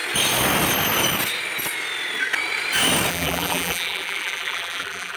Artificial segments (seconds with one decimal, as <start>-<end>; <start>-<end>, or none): 3.1-5.2